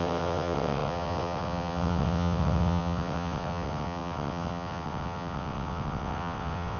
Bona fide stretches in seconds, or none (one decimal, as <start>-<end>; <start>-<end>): none